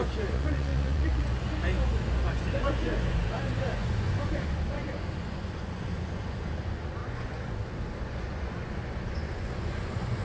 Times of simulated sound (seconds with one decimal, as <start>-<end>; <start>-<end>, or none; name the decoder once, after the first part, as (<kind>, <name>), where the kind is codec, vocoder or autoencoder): 0.0-10.2 (vocoder, Vocos)